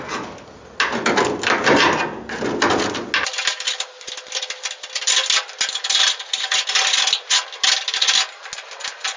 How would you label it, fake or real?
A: real